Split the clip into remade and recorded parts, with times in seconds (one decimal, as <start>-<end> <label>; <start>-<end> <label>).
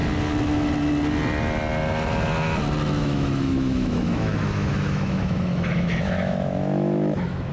0.0-3.0 recorded; 3.0-7.5 remade